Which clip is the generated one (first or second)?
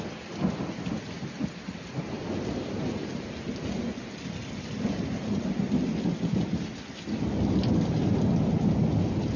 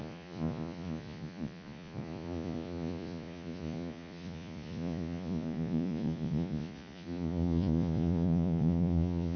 second